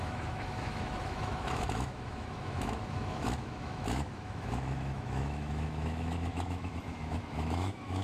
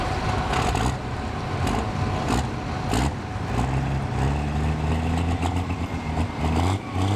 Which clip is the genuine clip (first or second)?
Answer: second